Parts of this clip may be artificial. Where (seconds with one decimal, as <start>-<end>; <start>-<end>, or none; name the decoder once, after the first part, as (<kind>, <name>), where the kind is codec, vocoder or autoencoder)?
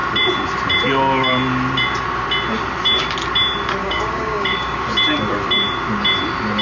3.8-4.8 (codec, DAC)